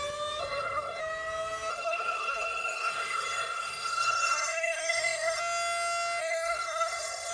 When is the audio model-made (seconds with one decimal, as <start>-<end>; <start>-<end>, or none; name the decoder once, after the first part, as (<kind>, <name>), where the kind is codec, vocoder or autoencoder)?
0.4-1.0 (codec, SNAC); 1.7-5.4; 6.2-7.3